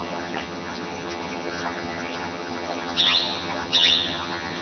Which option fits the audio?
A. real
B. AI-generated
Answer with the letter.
B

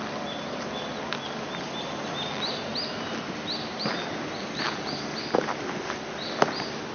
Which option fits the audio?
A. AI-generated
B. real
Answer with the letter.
B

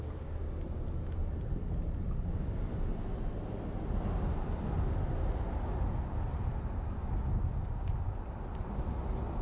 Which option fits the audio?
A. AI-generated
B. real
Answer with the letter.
B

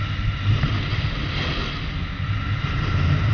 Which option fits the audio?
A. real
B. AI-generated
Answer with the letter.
A